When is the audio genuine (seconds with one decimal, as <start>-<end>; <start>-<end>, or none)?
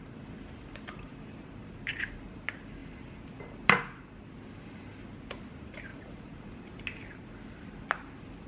0.0-5.9; 6.6-8.5